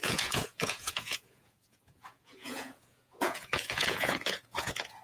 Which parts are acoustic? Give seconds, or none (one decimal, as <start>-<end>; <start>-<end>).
none